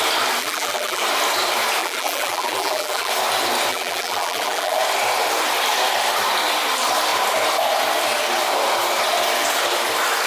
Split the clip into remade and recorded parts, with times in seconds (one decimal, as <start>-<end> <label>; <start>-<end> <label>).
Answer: 0.0-0.4 recorded; 0.4-1.0 remade; 1.0-1.8 recorded; 1.8-3.1 remade; 3.1-3.7 recorded; 3.7-4.8 remade; 4.8-10.3 recorded